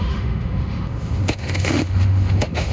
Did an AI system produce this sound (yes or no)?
yes